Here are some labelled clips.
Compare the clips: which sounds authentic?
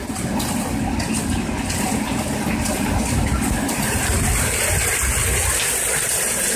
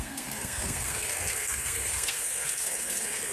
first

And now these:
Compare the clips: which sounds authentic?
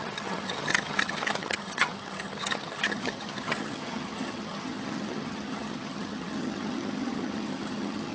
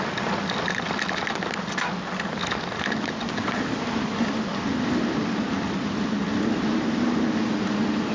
second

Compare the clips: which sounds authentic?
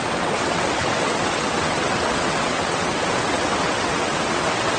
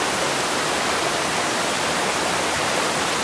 second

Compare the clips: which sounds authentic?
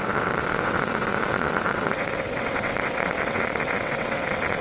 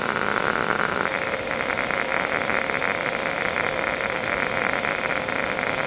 second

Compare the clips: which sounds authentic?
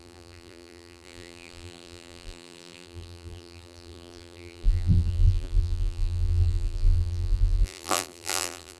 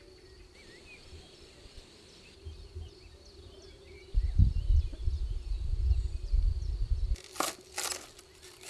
second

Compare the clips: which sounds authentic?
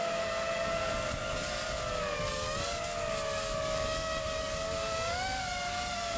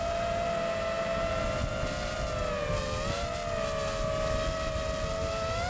second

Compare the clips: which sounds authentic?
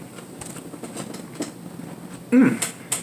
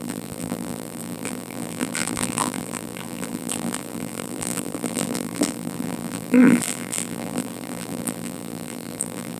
first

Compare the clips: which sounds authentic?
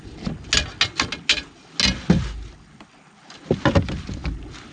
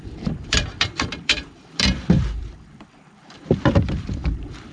first